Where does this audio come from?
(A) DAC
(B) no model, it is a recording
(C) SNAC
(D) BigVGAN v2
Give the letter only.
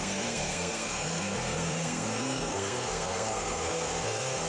C